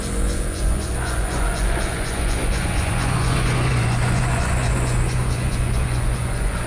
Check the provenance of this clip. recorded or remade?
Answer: remade